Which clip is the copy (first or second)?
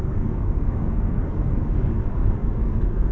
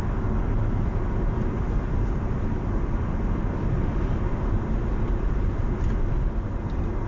first